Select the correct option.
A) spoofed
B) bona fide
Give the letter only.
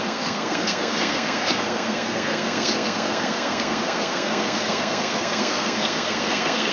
A